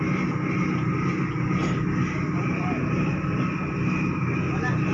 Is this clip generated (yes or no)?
no